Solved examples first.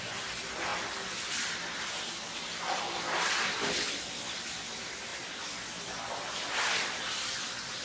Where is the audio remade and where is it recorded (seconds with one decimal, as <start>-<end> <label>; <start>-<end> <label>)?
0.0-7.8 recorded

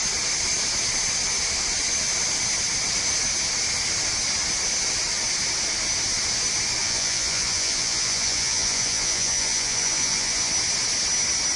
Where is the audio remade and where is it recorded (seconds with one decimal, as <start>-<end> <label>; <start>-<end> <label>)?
0.0-6.8 recorded; 6.8-10.5 remade; 10.5-11.6 recorded

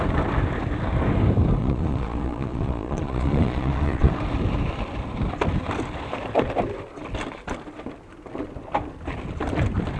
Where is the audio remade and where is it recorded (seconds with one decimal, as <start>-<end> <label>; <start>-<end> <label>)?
0.0-1.6 recorded; 1.6-4.1 remade; 4.1-10.0 recorded